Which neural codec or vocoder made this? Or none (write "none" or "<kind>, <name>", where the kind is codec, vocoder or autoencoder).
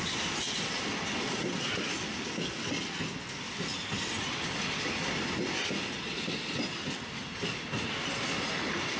none